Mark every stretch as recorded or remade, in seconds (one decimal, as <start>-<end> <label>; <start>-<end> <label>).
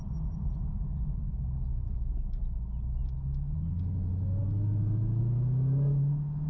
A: 0.0-6.5 recorded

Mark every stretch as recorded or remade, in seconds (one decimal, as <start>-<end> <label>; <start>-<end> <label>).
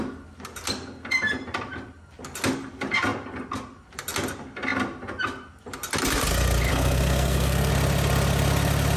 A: 0.0-6.7 recorded; 6.7-7.7 remade; 7.7-9.0 recorded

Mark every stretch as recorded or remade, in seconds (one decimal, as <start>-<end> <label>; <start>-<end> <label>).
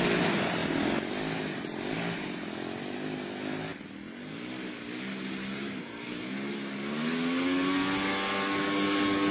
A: 0.0-9.3 recorded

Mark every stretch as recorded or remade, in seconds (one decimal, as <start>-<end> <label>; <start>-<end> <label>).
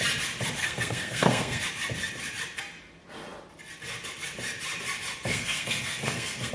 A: 0.0-0.6 recorded; 0.6-1.6 remade; 1.6-5.3 recorded; 5.3-6.5 remade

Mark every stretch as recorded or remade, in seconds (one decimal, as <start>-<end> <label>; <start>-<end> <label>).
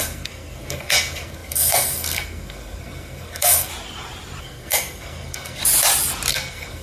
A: 0.0-3.7 remade; 3.7-4.4 recorded; 4.4-5.6 remade; 5.6-6.3 recorded; 6.3-6.8 remade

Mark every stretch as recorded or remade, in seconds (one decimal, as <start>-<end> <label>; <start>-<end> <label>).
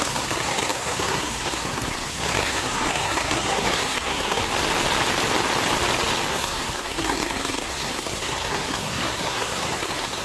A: 0.0-4.4 remade; 4.4-6.3 recorded; 6.3-10.2 remade